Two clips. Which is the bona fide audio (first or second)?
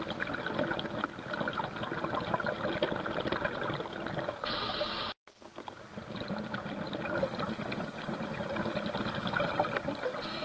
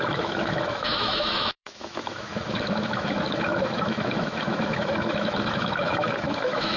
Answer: first